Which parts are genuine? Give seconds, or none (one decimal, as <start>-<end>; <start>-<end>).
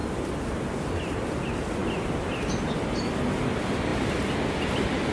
0.0-5.1